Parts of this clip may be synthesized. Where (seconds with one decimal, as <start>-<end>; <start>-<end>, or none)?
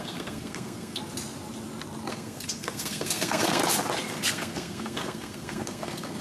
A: 0.0-1.0; 2.1-3.6; 4.1-6.2